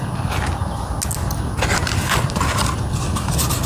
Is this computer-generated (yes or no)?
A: no